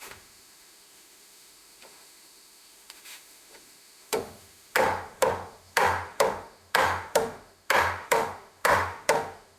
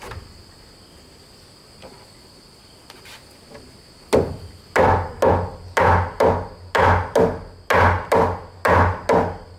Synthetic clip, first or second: first